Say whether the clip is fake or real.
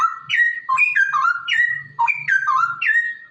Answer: real